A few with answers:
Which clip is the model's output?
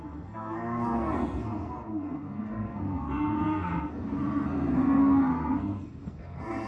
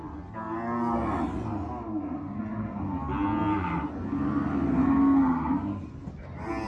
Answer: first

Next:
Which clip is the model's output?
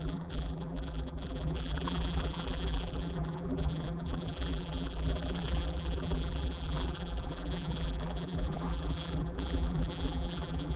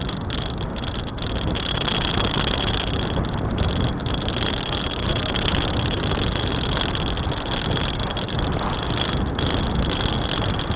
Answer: first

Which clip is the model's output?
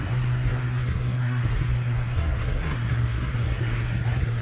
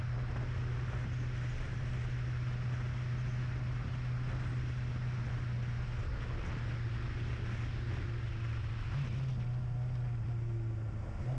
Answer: first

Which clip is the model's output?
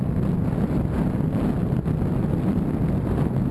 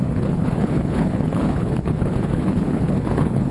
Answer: second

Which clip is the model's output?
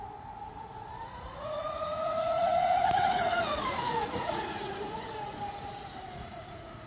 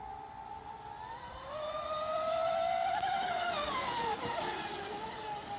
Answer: first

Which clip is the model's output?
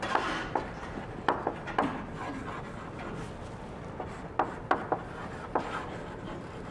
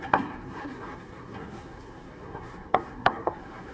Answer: second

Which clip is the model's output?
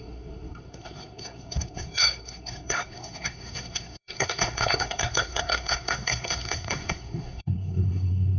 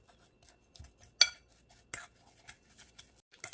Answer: first